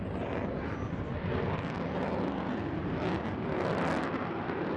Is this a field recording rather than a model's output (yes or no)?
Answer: yes